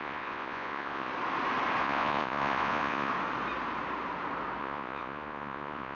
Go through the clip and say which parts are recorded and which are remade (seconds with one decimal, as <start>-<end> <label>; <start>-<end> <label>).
0.0-1.1 remade; 1.1-1.8 recorded; 1.8-3.1 remade; 3.1-4.6 recorded; 4.6-5.9 remade